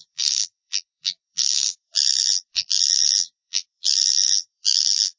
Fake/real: fake